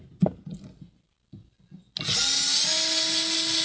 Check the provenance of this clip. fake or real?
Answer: real